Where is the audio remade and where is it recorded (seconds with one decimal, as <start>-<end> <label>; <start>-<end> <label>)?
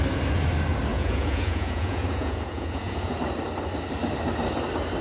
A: 0.0-0.9 recorded; 0.9-3.2 remade; 3.2-5.0 recorded